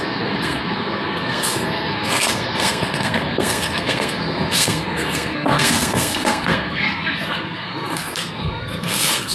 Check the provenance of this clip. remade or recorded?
remade